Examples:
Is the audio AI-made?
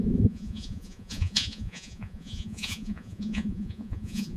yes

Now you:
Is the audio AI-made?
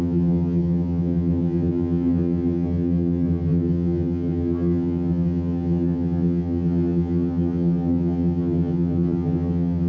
yes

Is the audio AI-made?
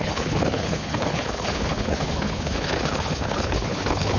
yes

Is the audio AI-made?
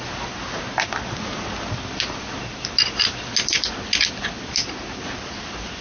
no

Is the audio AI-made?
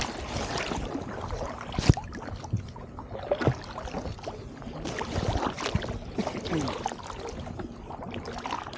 no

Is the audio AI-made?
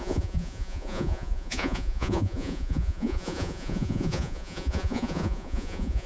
yes